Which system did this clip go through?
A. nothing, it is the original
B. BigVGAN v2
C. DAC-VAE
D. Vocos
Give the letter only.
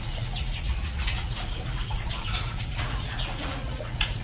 D